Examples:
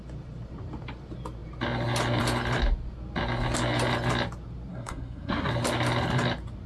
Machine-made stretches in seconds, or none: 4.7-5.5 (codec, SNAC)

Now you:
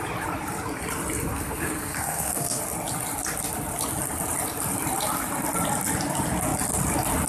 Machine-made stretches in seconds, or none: 1.3-2.6 (codec, SNAC)

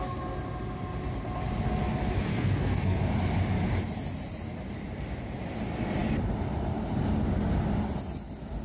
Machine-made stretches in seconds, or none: 2.3-3.0 (codec, SNAC)